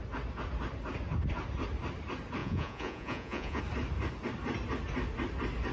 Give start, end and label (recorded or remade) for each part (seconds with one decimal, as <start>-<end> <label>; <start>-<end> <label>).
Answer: 0.0-2.4 recorded; 2.4-3.6 remade; 3.6-5.7 recorded